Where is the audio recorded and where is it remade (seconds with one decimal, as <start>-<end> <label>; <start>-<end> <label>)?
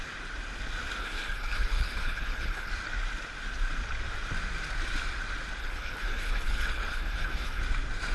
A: 0.0-1.0 recorded; 1.0-2.7 remade; 2.7-5.6 recorded; 5.6-7.6 remade; 7.6-8.1 recorded